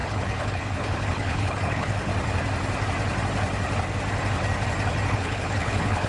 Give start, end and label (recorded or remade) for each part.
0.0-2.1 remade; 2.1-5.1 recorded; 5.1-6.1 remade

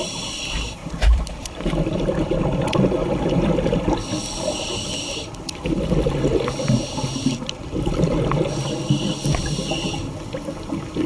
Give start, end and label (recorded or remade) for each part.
0.0-0.8 recorded; 0.8-2.4 remade; 2.4-11.1 recorded

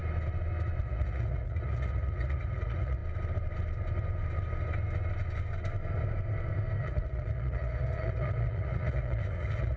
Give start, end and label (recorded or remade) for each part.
0.0-0.8 recorded; 0.8-3.0 remade; 3.0-6.8 recorded; 6.8-9.8 remade

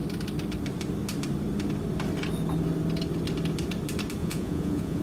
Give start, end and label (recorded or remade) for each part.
0.0-4.2 recorded; 4.2-5.0 remade

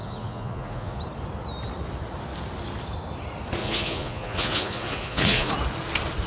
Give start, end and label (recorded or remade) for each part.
0.0-1.0 remade; 1.0-3.6 recorded; 3.6-5.5 remade; 5.5-6.3 recorded

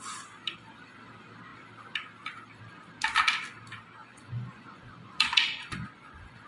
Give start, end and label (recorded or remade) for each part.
0.0-4.0 recorded; 4.0-6.5 remade

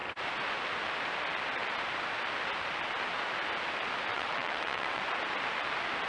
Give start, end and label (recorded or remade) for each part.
0.0-4.1 recorded; 4.1-5.0 remade; 5.0-6.1 recorded

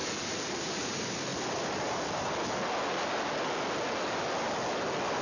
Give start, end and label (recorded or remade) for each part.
0.0-1.3 recorded; 1.3-2.5 remade; 2.5-5.2 recorded